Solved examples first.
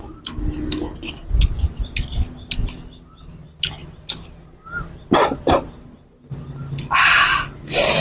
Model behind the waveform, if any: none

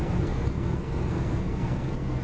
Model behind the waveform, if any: codec, SNAC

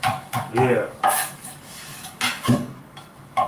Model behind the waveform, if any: codec, DAC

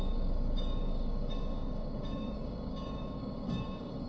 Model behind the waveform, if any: codec, DAC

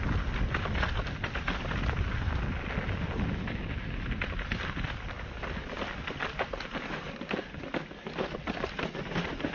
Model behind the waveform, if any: none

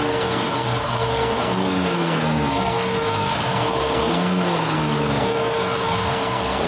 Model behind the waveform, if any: codec, SNAC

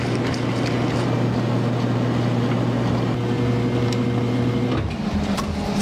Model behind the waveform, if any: none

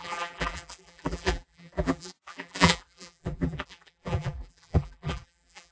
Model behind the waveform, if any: vocoder, BigVGAN v2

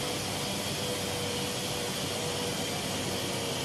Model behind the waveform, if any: none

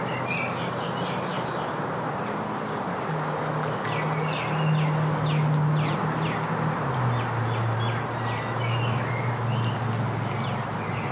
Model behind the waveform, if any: none